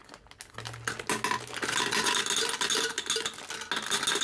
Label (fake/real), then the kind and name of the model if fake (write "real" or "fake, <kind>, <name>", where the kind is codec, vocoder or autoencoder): real